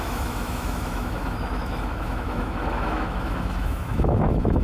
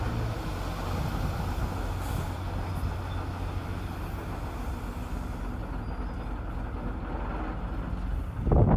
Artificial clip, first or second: first